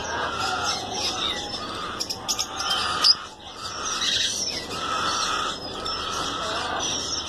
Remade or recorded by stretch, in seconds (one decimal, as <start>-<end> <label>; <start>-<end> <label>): 0.0-1.1 remade; 1.1-7.3 recorded